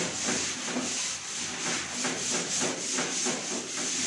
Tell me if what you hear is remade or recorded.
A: recorded